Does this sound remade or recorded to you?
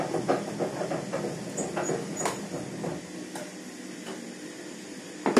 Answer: recorded